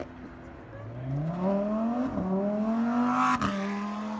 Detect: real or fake real